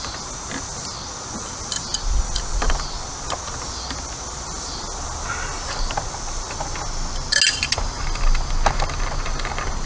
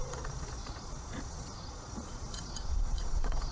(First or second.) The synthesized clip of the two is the second